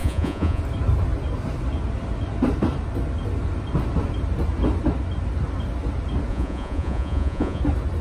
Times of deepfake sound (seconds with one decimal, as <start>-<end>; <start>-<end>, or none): 0.0-0.6; 6.3-7.6